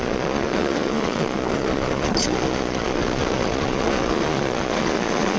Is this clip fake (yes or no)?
yes